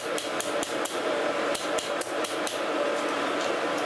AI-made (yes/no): yes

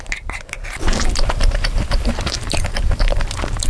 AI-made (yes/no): yes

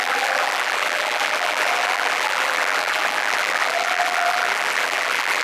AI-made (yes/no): yes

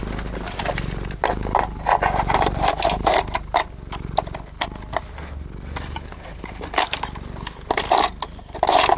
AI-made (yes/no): no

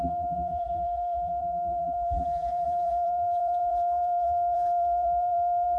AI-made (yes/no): yes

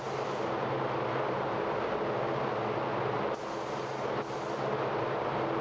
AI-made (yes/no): no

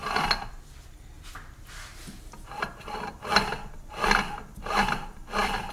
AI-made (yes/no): no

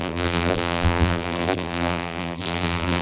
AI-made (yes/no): yes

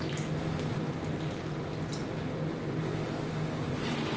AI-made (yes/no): no